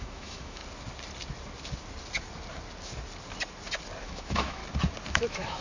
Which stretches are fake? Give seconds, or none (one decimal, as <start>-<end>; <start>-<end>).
0.0-0.6; 4.0-4.6; 5.1-5.6